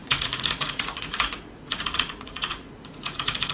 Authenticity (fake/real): fake